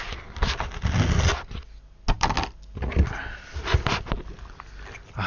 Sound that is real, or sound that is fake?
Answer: real